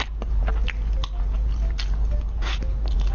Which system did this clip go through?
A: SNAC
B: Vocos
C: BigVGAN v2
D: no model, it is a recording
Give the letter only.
D